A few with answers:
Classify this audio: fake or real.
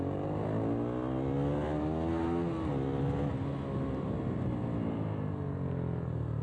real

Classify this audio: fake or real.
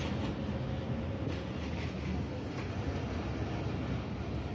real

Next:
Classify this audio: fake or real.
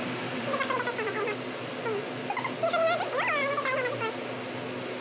real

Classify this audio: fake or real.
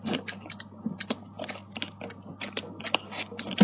real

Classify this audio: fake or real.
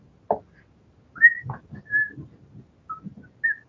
real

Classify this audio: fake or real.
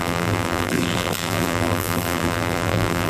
fake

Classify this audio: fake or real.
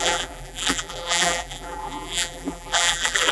fake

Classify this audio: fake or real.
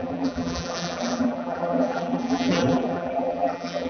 fake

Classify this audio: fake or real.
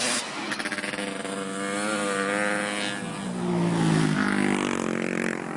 real